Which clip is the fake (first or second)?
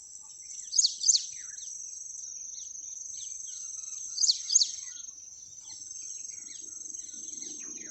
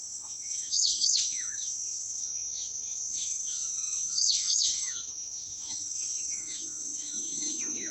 second